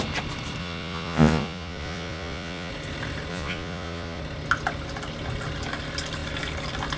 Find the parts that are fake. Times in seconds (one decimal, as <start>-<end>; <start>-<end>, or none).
0.6-2.7; 3.3-4.2